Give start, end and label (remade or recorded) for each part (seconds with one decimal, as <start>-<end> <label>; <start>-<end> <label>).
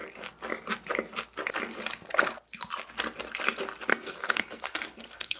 0.0-3.9 recorded; 3.9-5.4 remade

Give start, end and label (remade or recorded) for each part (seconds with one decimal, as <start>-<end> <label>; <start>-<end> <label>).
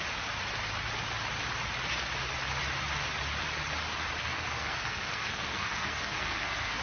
0.0-4.2 recorded; 4.2-6.8 remade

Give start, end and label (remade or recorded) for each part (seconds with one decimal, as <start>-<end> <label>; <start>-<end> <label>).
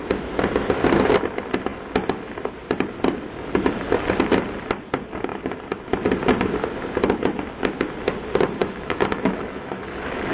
0.0-8.6 recorded; 8.6-10.3 remade